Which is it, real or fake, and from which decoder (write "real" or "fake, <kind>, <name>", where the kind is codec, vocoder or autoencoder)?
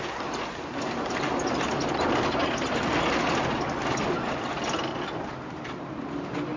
real